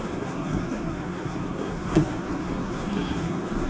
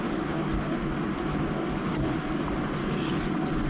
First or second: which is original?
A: second